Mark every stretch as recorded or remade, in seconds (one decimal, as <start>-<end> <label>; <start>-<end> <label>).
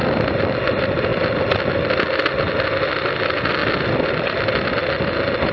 0.0-5.5 recorded